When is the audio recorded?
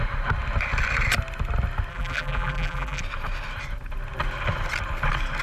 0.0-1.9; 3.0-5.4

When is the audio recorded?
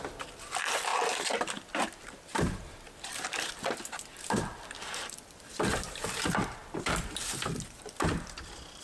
0.0-8.8